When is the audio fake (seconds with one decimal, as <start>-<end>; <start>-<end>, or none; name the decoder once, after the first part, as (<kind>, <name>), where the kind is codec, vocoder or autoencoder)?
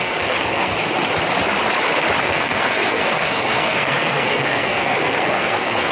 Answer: 0.0-0.7 (codec, SNAC); 2.2-5.9